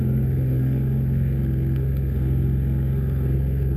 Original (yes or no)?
no